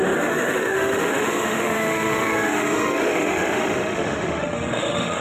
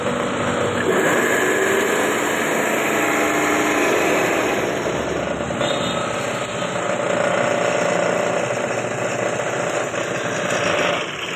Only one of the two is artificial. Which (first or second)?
first